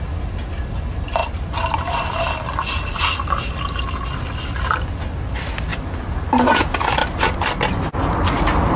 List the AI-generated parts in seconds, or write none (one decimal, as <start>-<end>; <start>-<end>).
none